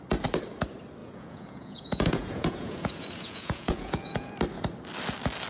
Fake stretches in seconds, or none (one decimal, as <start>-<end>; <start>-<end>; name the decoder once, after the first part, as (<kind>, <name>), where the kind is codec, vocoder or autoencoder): 1.0-4.3 (vocoder, Vocos)